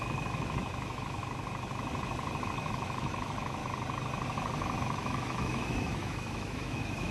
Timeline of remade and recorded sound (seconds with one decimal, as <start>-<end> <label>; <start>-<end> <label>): 0.0-1.2 remade; 1.2-2.5 recorded; 2.5-3.6 remade; 3.6-4.8 recorded; 4.8-7.1 remade